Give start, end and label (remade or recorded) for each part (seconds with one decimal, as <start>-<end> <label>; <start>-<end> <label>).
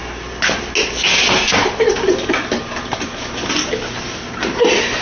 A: 0.0-5.0 recorded